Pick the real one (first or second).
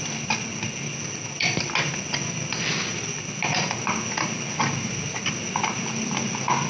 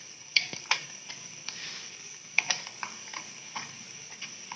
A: first